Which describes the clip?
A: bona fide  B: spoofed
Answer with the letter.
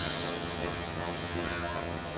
B